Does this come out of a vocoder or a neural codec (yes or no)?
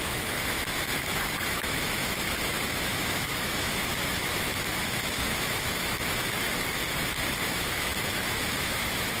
yes